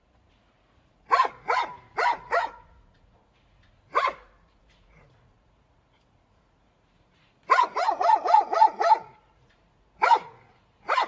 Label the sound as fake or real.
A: fake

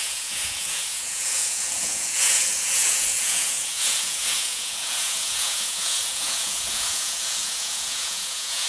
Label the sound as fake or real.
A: fake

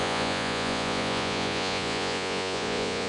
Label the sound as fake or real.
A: fake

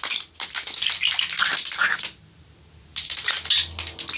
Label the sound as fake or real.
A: real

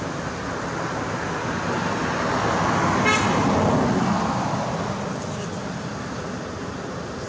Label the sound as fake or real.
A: real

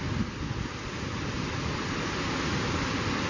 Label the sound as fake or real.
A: real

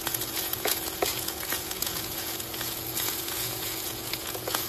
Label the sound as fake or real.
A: fake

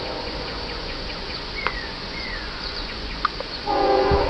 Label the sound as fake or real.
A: fake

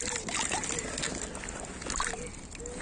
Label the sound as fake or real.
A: real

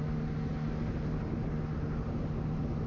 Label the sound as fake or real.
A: real